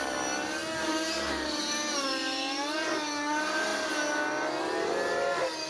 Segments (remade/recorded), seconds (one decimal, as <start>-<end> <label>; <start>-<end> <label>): 0.0-5.7 recorded